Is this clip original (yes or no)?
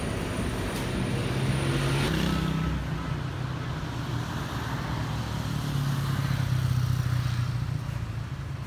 yes